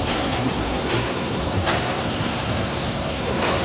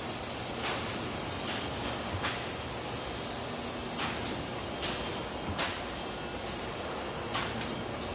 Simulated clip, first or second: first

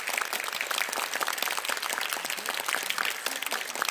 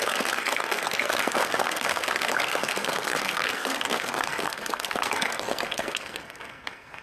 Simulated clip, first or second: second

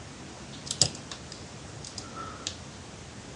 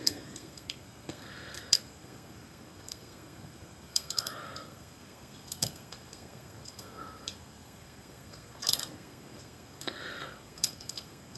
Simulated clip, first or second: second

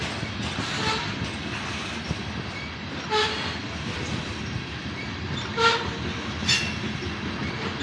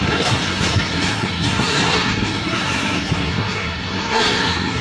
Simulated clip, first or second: second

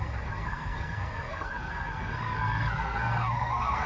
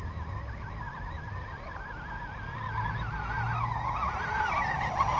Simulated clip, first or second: first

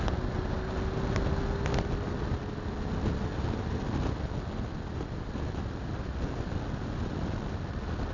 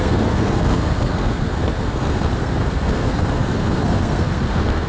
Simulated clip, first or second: second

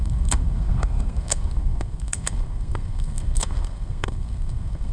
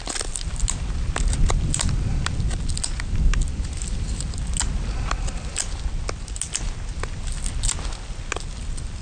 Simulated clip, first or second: first